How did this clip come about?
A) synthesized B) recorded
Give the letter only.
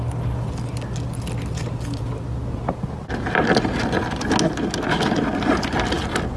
B